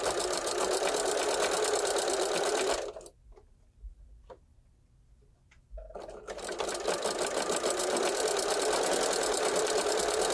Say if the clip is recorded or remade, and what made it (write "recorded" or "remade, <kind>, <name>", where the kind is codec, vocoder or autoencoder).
remade, vocoder, BigVGAN v2